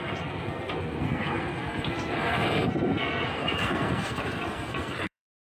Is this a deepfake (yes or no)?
yes